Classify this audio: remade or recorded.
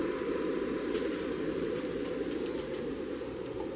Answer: remade